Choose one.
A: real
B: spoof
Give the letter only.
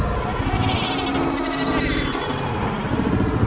A